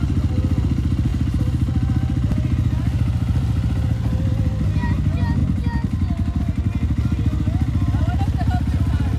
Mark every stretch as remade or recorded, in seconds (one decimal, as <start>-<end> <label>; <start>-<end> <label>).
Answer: 0.0-9.2 recorded